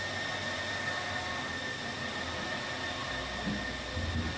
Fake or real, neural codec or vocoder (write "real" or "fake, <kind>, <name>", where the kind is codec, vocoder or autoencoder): real